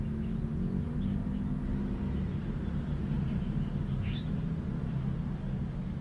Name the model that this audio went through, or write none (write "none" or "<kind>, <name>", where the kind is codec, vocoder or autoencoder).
none